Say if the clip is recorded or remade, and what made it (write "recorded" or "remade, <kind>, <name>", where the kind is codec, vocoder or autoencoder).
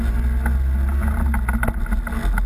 recorded